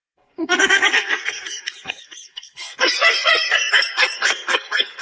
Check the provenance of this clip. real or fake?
fake